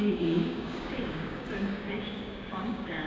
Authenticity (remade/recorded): remade